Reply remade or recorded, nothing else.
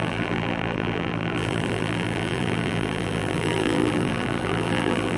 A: remade